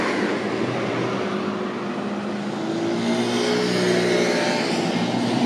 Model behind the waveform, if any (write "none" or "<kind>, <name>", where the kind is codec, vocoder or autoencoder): none